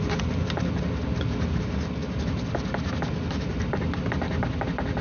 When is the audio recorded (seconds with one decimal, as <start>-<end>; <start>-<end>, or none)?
0.0-5.0